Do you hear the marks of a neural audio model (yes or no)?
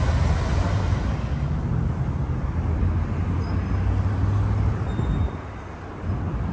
no